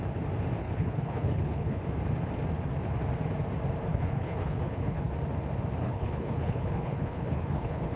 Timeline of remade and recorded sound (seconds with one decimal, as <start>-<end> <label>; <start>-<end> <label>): 0.0-0.6 recorded; 0.6-1.8 remade; 1.8-3.9 recorded; 3.9-5.1 remade; 5.1-5.8 recorded; 5.8-8.0 remade